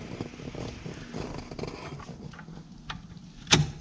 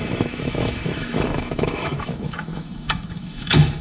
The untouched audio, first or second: first